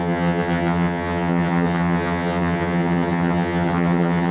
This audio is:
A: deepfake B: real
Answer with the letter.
A